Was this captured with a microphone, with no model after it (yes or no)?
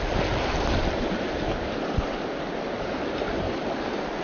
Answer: yes